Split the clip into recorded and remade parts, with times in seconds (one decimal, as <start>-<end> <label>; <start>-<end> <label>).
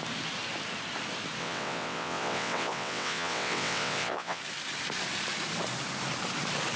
0.0-1.4 recorded; 1.4-4.4 remade; 4.4-6.8 recorded